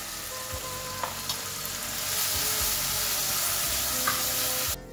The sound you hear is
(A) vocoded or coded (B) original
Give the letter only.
B